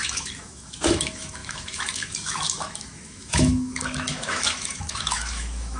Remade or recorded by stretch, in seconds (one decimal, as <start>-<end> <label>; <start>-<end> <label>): 0.0-5.8 remade